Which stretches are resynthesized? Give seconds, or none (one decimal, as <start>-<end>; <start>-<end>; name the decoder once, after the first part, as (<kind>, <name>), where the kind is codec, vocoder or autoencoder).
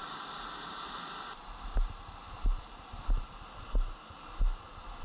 none